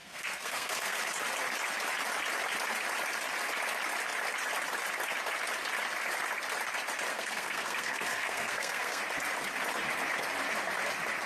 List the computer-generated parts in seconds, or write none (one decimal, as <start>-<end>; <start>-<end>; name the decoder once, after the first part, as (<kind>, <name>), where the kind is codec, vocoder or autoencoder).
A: 0.0-1.1 (codec, SNAC); 7.1-9.0